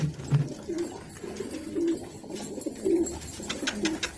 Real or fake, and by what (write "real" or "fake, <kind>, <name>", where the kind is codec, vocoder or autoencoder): real